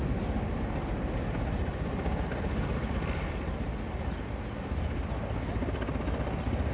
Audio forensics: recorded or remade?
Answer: recorded